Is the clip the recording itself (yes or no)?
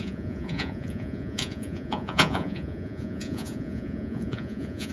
no